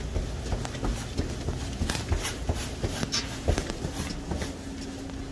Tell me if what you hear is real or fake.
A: real